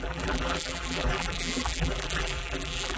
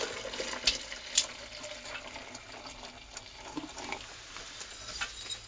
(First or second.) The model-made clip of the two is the first